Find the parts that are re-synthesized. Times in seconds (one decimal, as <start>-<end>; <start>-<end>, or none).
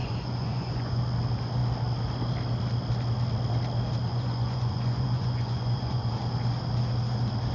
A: 0.0-1.0; 4.1-6.1